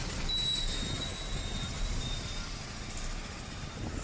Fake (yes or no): no